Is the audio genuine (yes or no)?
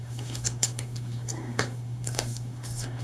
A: no